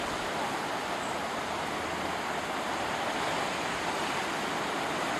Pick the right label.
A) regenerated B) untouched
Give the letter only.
B